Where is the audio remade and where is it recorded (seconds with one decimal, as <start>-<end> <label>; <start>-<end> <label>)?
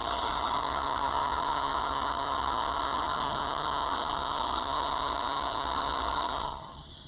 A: 0.0-7.1 remade